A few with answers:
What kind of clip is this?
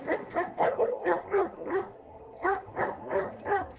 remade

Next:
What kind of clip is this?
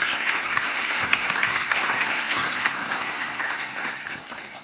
remade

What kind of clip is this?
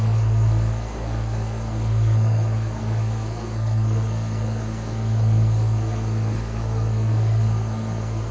remade